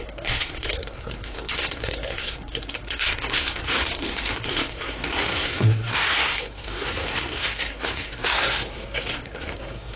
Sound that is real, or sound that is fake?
fake